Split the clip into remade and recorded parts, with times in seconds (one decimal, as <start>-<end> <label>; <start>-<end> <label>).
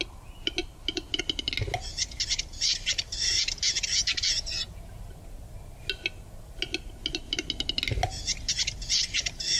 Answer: 0.0-9.6 recorded